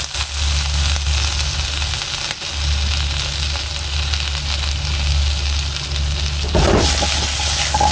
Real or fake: real